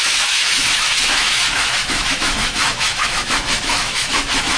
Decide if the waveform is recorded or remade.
remade